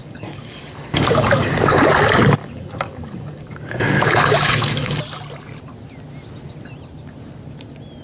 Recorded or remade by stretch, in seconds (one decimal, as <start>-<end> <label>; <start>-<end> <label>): 0.0-1.8 remade; 1.8-2.4 recorded; 2.4-5.0 remade; 5.0-8.0 recorded

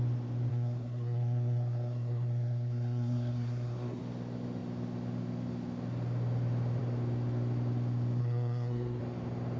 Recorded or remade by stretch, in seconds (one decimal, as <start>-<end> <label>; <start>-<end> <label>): 0.0-0.5 recorded; 0.5-4.0 remade; 4.0-8.2 recorded; 8.2-9.0 remade; 9.0-9.6 recorded